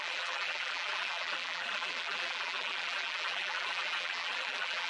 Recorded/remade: remade